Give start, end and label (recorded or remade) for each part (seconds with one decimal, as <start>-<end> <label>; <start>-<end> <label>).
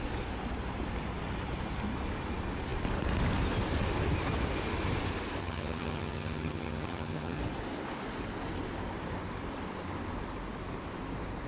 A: 0.0-5.4 recorded; 5.4-7.4 remade; 7.4-11.5 recorded